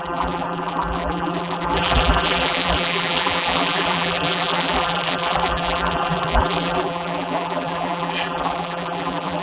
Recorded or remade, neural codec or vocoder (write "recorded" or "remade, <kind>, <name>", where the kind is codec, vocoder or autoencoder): remade, vocoder, BigVGAN v2